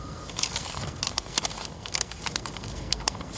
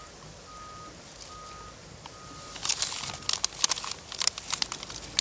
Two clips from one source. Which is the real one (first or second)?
second